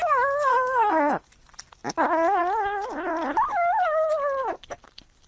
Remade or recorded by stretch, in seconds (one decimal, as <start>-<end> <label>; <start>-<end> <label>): 0.0-0.5 recorded; 0.5-1.2 remade; 1.2-5.3 recorded